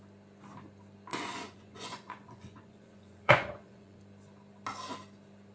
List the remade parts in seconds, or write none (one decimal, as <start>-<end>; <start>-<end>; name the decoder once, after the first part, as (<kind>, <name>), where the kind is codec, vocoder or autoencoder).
1.1-4.0 (vocoder, Vocos)